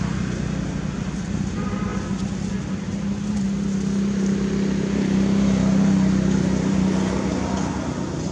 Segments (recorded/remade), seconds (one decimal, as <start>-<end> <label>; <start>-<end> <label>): 0.0-8.3 recorded